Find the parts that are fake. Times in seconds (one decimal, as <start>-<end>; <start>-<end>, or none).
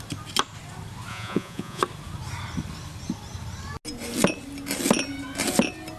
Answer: 1.1-1.8